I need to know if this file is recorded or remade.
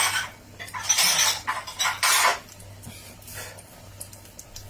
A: recorded